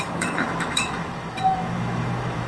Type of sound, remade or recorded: remade